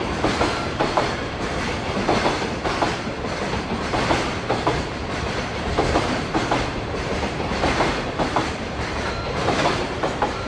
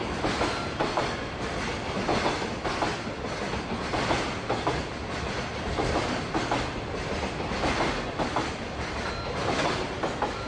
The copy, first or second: first